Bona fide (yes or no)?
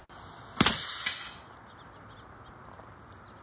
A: yes